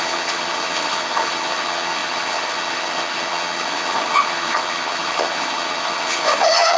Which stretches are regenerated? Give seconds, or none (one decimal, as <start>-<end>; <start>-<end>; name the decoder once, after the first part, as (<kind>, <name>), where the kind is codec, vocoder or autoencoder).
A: 0.0-6.8 (vocoder, HiFi-GAN)